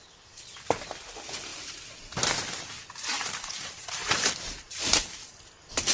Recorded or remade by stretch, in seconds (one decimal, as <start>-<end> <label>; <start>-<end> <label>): 0.0-5.9 recorded